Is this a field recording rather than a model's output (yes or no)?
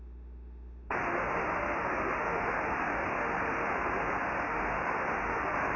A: no